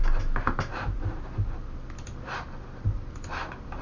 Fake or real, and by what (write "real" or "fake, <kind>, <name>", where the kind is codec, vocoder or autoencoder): real